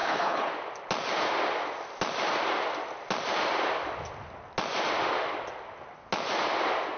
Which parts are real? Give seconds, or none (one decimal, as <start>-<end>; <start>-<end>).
0.5-7.0